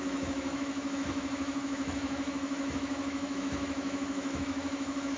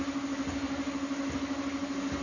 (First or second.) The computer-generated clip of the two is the first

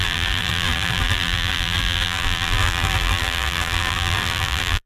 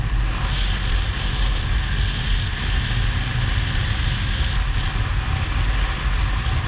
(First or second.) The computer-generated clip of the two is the first